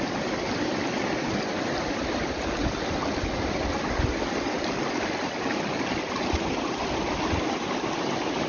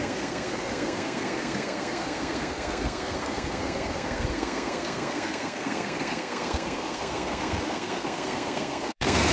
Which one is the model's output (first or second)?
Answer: second